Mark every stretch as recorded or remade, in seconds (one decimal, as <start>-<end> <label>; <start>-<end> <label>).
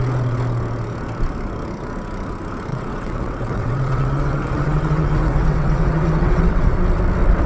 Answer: 0.0-2.7 recorded; 2.7-6.8 remade; 6.8-7.5 recorded